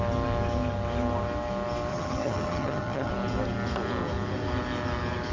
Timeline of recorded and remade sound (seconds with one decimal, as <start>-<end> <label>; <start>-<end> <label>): 0.0-1.9 recorded; 1.9-3.1 remade; 3.1-5.3 recorded